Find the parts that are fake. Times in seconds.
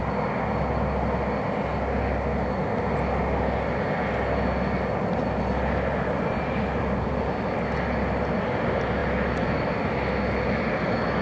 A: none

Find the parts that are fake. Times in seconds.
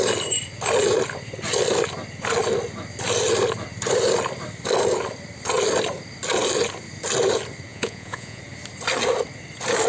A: 7.7-8.4 (vocoder, Vocos)